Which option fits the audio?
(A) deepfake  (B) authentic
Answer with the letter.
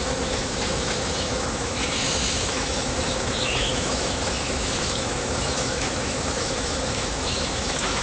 A